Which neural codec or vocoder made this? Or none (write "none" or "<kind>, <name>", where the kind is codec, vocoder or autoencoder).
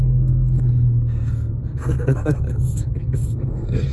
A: codec, SNAC